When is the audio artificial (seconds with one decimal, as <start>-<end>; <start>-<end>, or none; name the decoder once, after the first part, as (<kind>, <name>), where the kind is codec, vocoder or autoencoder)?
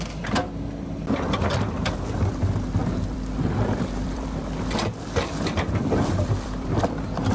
1.0-2.4 (vocoder, BigVGAN v2); 2.8-7.3